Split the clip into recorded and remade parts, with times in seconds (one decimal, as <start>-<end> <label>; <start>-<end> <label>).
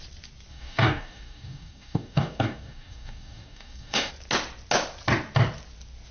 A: 0.0-0.5 recorded; 0.5-4.1 remade; 4.1-6.1 recorded